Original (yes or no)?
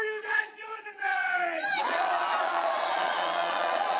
no